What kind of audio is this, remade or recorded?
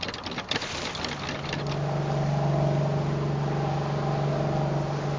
recorded